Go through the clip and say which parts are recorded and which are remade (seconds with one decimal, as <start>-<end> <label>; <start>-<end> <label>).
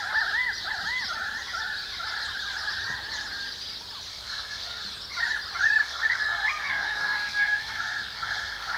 0.0-4.1 recorded; 4.1-4.8 remade; 4.8-5.8 recorded; 5.8-8.8 remade